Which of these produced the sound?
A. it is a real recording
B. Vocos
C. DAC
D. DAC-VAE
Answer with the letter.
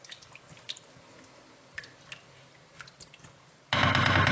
A